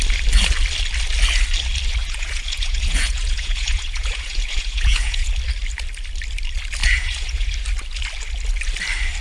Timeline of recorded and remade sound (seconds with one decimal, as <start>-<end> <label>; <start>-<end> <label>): 0.0-2.0 recorded; 2.0-5.3 remade; 5.3-6.8 recorded; 6.8-7.5 remade; 7.5-9.2 recorded